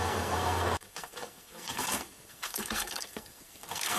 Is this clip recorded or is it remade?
remade